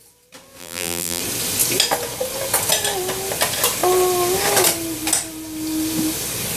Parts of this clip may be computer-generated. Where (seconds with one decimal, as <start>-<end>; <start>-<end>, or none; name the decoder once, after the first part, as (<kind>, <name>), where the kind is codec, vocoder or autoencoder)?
0.6-1.2 (vocoder, BigVGAN v2)